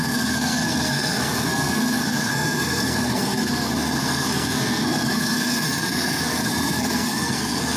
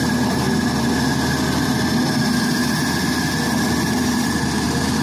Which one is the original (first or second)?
second